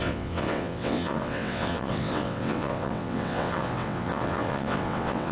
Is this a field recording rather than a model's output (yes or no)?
no